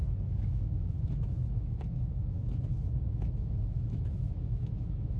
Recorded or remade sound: remade